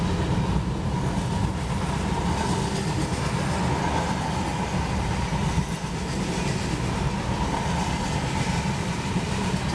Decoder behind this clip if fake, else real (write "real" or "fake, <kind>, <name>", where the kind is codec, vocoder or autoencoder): real